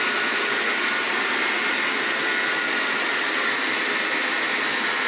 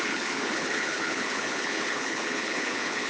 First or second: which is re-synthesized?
second